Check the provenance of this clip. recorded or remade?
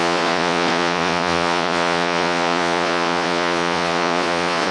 remade